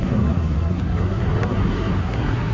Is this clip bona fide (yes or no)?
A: no